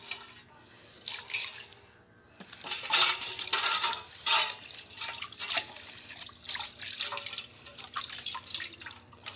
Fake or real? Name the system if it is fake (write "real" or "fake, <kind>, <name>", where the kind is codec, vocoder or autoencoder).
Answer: real